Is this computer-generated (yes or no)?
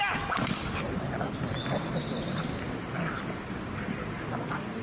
no